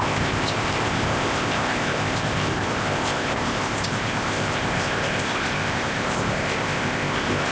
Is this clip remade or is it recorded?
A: remade